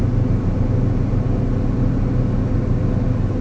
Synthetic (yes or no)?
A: no